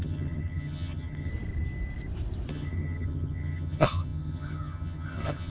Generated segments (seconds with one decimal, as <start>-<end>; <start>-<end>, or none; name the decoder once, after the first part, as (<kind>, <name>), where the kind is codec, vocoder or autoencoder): 0.0-1.3 (vocoder, HiFi-GAN); 2.5-5.5